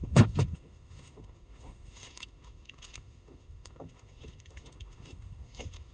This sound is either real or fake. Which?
fake